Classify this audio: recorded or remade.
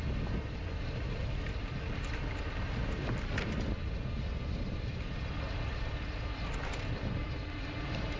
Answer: remade